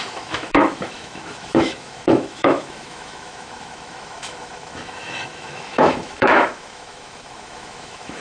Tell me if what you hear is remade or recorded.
remade